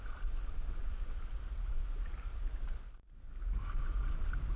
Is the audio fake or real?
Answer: real